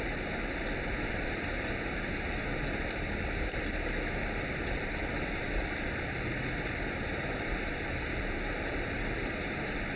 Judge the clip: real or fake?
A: fake